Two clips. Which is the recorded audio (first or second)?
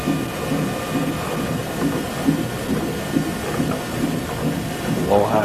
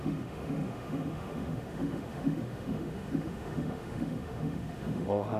first